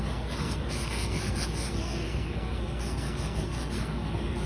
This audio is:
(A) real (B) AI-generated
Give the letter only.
B